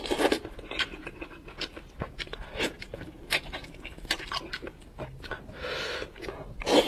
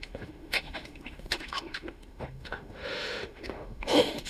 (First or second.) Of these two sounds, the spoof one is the second